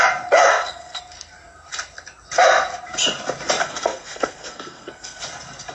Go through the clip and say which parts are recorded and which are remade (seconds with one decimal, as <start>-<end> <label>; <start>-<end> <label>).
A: 0.0-0.5 recorded; 0.5-1.0 remade; 1.0-3.6 recorded; 3.6-5.2 remade; 5.2-5.7 recorded